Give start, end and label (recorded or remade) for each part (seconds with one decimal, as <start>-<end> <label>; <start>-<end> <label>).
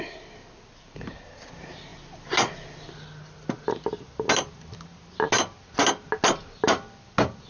0.0-7.5 recorded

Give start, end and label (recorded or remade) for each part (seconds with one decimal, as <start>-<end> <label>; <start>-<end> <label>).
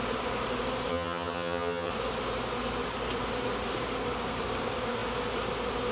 0.0-0.9 recorded; 0.9-1.9 remade; 1.9-5.9 recorded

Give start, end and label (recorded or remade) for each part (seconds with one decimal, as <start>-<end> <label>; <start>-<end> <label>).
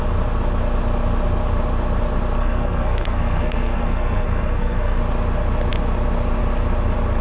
0.0-2.4 recorded; 2.4-5.0 remade; 5.0-7.2 recorded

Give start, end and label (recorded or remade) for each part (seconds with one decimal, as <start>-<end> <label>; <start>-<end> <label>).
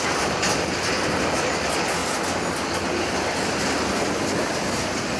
0.0-5.2 recorded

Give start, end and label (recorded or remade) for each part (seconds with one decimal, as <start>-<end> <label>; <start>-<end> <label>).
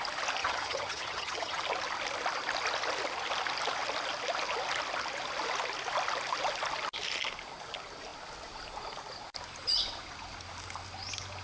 0.0-0.4 recorded; 0.4-1.6 remade; 1.6-11.4 recorded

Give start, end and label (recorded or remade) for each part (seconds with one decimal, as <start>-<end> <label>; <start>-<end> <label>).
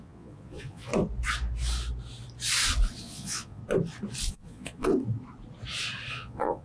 0.0-0.9 remade; 0.9-3.0 recorded; 3.0-3.6 remade; 3.6-4.3 recorded; 4.3-4.9 remade; 4.9-6.1 recorded; 6.1-6.6 remade